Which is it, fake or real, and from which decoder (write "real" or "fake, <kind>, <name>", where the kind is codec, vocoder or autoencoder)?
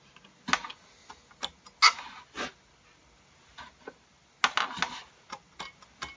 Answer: real